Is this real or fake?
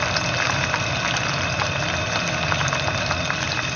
real